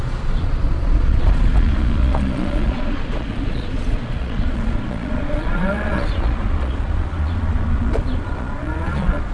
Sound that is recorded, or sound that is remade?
remade